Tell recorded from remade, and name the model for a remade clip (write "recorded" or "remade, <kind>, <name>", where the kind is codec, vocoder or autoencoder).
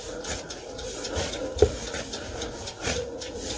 remade, vocoder, Vocos